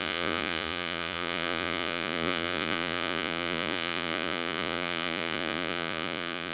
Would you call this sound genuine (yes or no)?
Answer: no